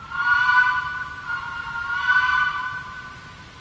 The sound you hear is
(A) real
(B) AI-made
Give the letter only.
B